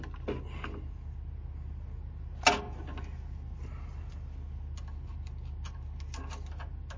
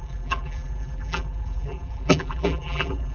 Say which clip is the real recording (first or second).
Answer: first